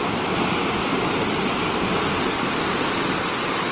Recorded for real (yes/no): yes